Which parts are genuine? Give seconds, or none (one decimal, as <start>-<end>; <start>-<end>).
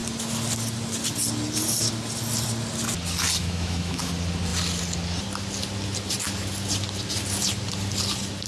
0.0-3.4; 4.1-8.5